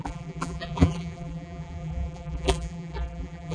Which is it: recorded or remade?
remade